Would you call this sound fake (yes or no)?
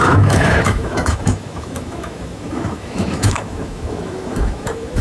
yes